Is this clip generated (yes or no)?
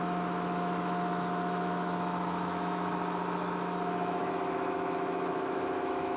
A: yes